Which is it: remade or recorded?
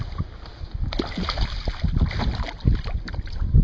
recorded